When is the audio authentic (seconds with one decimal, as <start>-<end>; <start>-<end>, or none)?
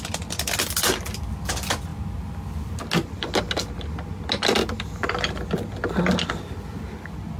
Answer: 0.0-7.4